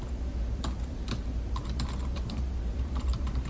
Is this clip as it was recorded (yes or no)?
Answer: no